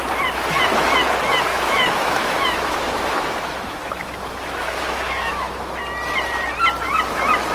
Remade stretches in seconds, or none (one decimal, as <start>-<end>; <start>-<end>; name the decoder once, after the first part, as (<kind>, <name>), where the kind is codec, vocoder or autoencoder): 1.5-5.8 (autoencoder, DAC-VAE)